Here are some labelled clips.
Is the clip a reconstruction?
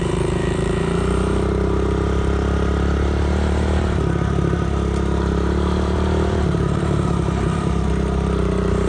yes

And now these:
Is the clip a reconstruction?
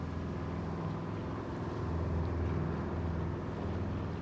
no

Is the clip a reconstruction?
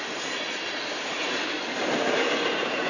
yes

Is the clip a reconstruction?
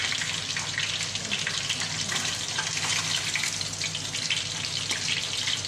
no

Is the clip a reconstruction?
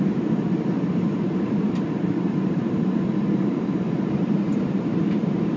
yes